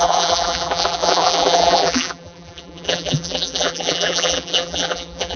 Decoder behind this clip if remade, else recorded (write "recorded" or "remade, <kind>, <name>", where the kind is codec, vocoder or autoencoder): remade, vocoder, BigVGAN v2